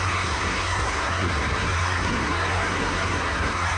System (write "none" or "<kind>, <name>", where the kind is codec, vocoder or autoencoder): codec, SNAC